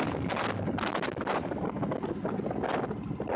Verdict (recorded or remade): recorded